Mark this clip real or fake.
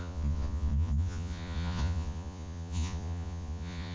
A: fake